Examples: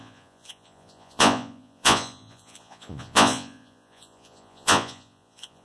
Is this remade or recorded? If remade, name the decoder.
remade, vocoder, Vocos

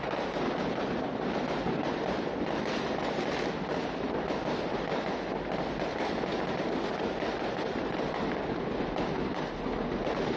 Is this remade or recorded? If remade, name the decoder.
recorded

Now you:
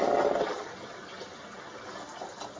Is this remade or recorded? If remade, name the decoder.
recorded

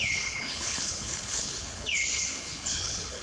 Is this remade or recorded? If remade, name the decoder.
remade, codec, HILCodec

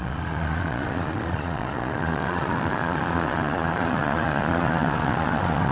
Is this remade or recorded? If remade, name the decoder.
remade, vocoder, Vocos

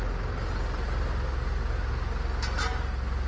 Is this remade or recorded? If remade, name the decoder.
recorded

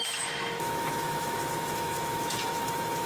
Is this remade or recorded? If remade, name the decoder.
remade, autoencoder, DAC-VAE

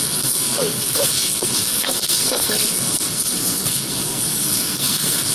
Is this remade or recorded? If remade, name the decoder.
remade, codec, SNAC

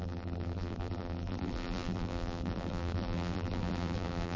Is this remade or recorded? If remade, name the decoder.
remade, vocoder, BigVGAN v2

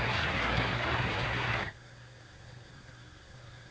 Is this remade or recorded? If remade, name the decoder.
remade, codec, SNAC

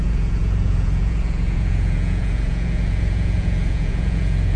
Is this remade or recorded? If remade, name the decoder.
remade, vocoder, Vocos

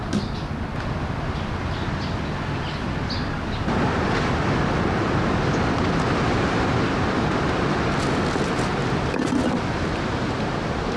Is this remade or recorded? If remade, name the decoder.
recorded